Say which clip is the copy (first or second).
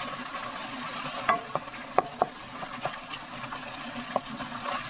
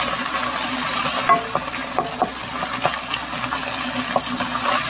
first